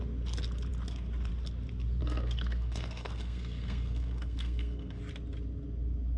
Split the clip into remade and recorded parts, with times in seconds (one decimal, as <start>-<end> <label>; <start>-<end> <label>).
0.0-2.0 recorded; 2.0-5.0 remade; 5.0-6.2 recorded